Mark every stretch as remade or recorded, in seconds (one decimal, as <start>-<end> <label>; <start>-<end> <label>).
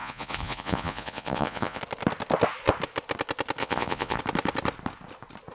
0.0-1.8 remade; 1.8-3.6 recorded; 3.6-4.2 remade; 4.2-5.5 recorded